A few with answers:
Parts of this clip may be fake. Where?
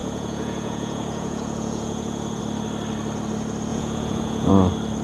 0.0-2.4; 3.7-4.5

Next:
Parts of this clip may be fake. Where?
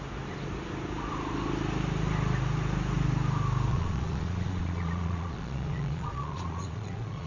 3.7-7.3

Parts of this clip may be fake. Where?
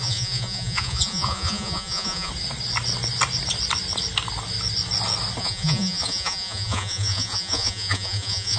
0.0-2.3; 5.4-8.6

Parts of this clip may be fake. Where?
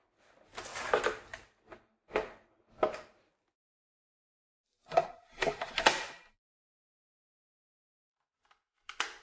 none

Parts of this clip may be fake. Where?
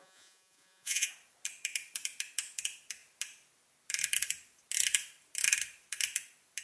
0.0-1.1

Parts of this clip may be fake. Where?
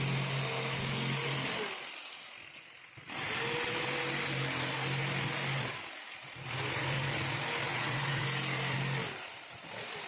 7.7-8.2